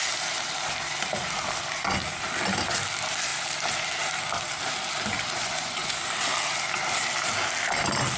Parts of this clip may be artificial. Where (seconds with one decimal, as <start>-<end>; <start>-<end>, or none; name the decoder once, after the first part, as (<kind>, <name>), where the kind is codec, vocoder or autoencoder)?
5.4-6.0 (vocoder, Vocos)